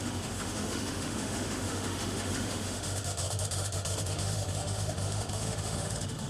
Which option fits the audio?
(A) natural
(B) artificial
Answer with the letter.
B